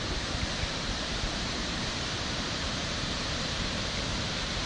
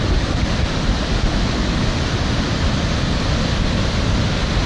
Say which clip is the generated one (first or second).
first